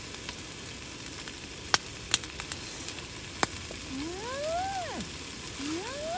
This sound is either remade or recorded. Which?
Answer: recorded